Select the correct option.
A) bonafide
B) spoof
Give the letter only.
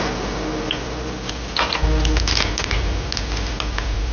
A